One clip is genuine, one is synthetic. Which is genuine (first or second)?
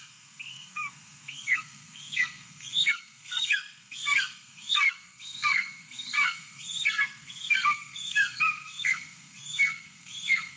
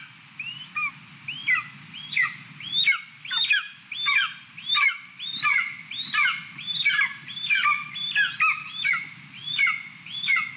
second